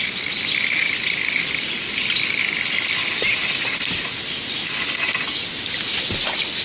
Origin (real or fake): real